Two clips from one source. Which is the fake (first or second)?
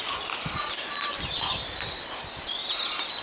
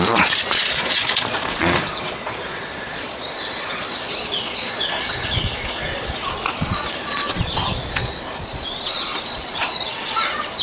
second